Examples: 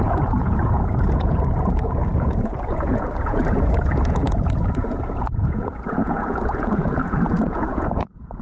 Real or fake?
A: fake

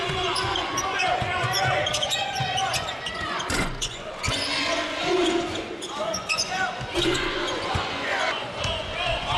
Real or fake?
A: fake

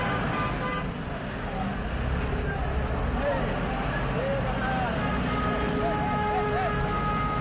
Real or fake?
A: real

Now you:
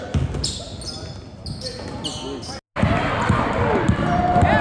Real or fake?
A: real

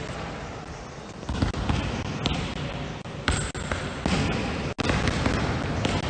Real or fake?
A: real